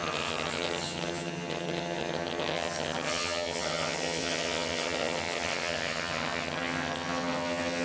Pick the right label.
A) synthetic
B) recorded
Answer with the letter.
A